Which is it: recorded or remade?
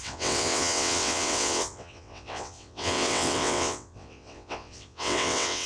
remade